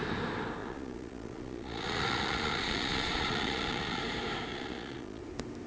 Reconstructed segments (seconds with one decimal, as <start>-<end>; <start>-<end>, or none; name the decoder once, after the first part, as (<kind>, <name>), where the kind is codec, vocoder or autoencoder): 0.6-4.0 (vocoder, Vocos); 4.5-5.2